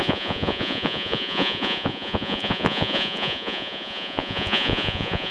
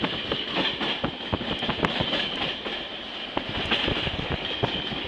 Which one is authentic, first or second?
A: second